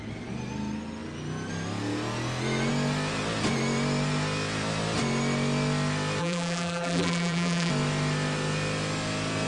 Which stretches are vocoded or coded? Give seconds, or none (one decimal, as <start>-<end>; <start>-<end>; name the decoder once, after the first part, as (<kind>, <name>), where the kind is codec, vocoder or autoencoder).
6.2-7.7 (vocoder, BigVGAN v2)